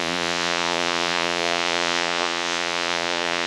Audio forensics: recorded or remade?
remade